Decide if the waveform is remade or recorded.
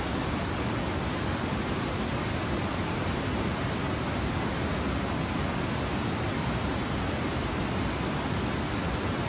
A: recorded